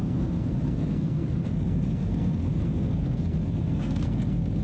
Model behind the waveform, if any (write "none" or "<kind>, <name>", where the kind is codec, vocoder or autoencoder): codec, SNAC